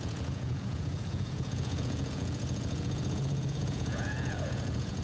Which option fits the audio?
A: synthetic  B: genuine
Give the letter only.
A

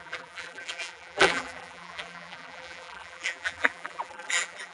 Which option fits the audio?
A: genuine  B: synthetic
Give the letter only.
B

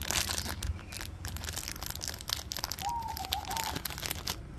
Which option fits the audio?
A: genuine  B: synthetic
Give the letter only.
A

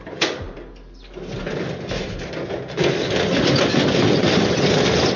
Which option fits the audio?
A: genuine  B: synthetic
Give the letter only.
A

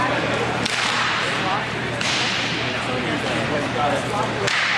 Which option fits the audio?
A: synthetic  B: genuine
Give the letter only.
A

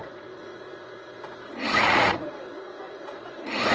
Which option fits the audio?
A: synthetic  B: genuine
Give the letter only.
A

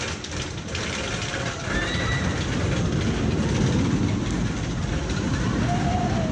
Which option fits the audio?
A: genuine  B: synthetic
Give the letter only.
A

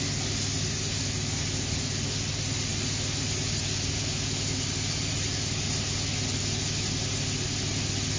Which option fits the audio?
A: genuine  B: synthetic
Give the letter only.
A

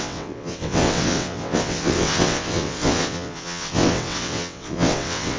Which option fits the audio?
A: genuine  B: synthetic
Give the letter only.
B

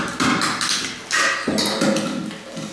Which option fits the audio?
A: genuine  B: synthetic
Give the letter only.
A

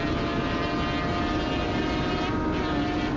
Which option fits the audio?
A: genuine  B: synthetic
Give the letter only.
A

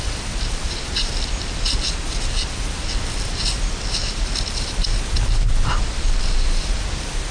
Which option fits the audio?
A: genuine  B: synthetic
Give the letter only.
A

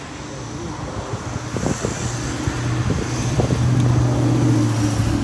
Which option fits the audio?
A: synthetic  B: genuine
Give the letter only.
B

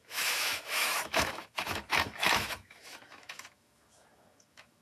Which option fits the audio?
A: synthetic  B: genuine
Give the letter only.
A